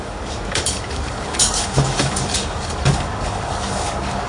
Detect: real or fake fake